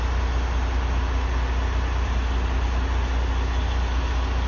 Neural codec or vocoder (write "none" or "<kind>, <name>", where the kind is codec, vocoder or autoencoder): none